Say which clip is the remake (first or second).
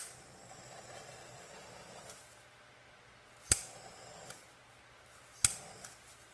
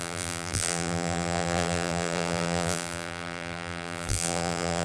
second